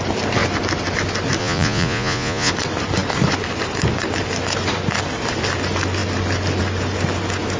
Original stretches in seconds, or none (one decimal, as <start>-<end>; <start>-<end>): 0.0-1.4; 2.5-7.6